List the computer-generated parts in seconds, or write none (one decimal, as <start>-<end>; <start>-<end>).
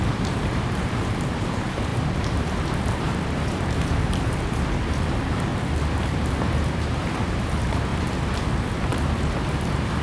0.0-5.5; 6.0-7.9; 8.5-10.0